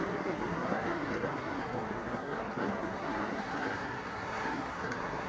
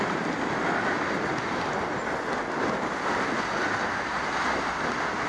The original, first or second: second